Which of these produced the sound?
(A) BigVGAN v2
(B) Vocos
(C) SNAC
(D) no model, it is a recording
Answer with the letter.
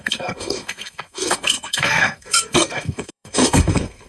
C